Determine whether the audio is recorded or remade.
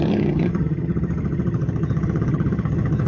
remade